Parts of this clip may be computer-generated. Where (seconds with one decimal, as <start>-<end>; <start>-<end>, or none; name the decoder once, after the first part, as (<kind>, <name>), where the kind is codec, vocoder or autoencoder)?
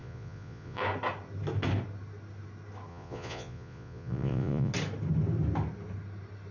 0.0-0.8 (vocoder, Vocos); 2.9-4.7